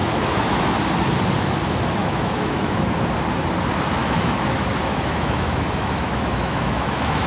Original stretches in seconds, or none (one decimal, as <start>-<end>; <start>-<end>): 0.8-2.0; 2.9-4.0